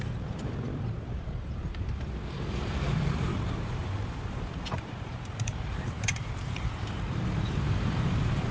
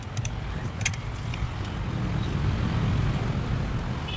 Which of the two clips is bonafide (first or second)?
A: second